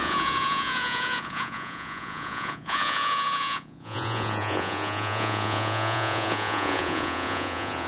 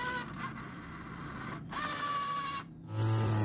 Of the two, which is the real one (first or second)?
second